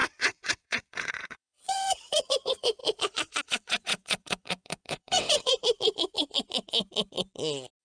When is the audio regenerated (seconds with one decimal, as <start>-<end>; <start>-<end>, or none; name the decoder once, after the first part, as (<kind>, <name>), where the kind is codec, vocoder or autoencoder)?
0.0-2.8 (vocoder, WaveNeXt); 3.4-5.5